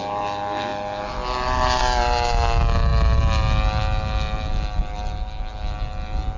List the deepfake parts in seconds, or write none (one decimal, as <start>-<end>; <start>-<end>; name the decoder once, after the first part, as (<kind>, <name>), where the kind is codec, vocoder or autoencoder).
none

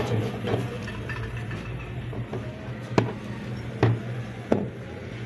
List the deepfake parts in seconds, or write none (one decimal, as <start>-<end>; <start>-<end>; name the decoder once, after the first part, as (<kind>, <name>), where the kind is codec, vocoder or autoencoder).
0.0-0.8 (vocoder, Vocos); 4.0-5.3

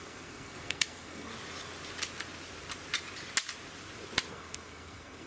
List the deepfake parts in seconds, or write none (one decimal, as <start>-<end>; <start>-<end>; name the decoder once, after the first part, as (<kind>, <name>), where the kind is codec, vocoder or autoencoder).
0.0-1.3 (codec, SNAC); 4.3-5.3